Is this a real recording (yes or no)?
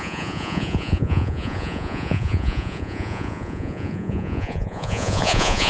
no